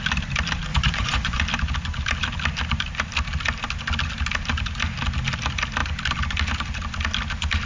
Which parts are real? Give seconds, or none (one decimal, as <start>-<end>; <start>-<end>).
0.0-0.7; 1.4-7.7